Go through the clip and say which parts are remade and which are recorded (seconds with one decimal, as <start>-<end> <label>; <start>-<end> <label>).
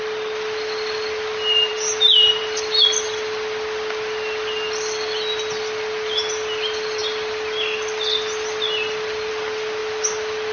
0.0-10.5 recorded